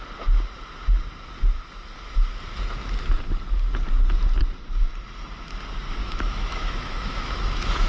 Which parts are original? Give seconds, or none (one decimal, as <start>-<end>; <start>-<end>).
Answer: 0.0-6.0